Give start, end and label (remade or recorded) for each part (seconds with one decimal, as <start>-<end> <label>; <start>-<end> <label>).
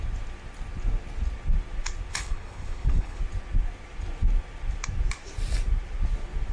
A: 0.0-2.1 recorded; 2.1-3.2 remade; 3.2-6.5 recorded